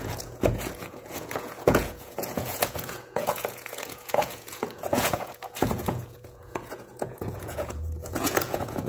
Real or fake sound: fake